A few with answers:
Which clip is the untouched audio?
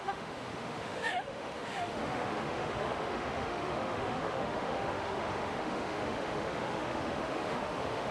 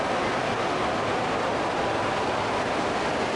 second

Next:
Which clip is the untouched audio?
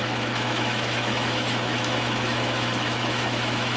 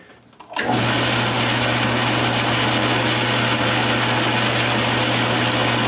second